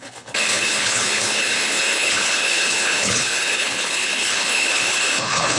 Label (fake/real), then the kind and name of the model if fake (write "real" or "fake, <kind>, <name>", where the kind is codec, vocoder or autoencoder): fake, codec, HILCodec